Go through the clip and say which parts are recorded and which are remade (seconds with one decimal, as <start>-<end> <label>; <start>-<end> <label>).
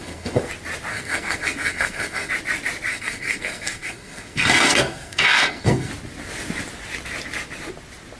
0.0-0.5 remade; 0.5-0.9 recorded; 0.9-2.3 remade; 2.3-2.9 recorded; 2.9-5.9 remade; 5.9-8.2 recorded